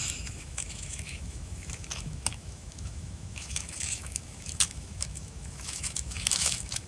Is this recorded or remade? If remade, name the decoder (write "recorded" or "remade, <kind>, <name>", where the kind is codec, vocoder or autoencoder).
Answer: remade, autoencoder, DAC-VAE